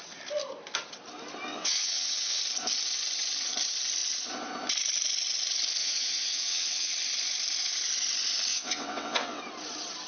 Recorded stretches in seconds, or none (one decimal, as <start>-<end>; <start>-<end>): 0.0-1.5; 2.4-5.8; 6.9-8.5; 9.4-10.1